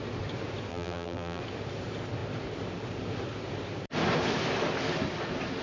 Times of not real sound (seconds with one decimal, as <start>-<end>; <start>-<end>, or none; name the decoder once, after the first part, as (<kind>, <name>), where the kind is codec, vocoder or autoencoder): 0.7-1.4 (vocoder, BigVGAN v2)